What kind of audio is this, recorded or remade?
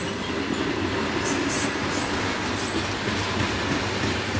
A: recorded